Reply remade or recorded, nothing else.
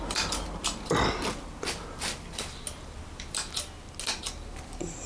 recorded